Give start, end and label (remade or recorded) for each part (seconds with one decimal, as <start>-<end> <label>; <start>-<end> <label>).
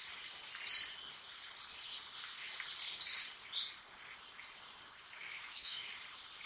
0.0-5.2 recorded; 5.2-5.9 remade; 5.9-6.5 recorded